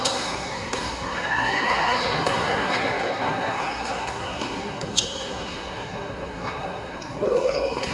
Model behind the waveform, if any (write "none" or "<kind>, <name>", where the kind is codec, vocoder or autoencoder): codec, SNAC